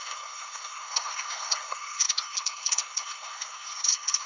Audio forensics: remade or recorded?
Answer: remade